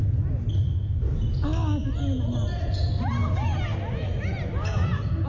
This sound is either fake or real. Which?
real